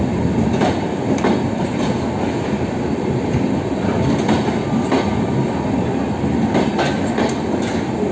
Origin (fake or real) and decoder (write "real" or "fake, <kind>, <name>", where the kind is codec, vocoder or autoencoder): real